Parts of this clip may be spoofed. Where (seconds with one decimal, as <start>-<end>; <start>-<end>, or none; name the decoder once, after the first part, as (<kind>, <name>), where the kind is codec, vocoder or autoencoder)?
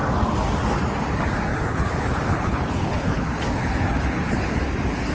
1.5-4.6 (codec, HILCodec)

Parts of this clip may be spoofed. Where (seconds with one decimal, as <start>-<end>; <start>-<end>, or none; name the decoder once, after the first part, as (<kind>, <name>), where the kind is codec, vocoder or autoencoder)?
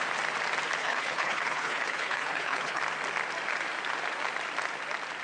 0.8-2.8 (codec, HILCodec)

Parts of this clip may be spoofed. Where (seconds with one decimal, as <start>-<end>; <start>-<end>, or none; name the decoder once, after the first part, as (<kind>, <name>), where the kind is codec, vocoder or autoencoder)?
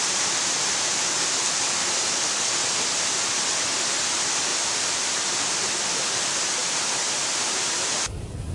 none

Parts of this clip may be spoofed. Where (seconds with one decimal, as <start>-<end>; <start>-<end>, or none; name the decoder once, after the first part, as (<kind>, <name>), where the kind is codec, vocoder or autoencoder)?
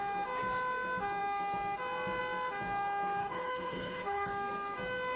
3.2-4.3 (codec, HILCodec)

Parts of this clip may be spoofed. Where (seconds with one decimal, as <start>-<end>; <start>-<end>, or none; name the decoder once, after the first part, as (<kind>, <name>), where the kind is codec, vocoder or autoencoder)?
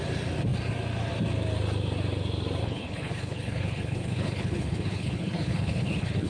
2.6-6.3 (codec, HILCodec)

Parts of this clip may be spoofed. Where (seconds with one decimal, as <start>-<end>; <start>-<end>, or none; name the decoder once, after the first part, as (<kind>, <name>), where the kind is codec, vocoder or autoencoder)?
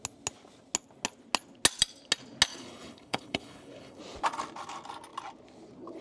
2.5-4.0 (codec, HILCodec)